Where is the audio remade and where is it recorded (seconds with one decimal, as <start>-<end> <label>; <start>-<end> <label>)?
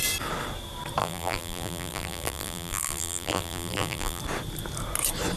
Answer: 0.0-1.0 recorded; 1.0-4.2 remade; 4.2-5.4 recorded